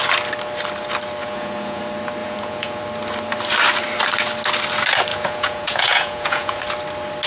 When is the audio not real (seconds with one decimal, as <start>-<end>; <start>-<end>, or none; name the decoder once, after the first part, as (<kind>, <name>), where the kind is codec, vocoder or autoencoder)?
1.2-1.8 (vocoder, Vocos); 2.2-2.8; 5.1-6.6